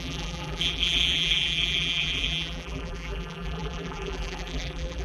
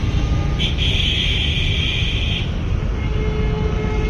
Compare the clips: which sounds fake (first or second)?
first